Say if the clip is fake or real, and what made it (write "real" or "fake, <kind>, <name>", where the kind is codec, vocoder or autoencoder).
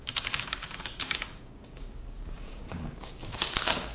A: fake, codec, DAC